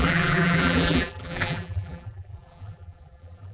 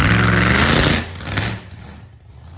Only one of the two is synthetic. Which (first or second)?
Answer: first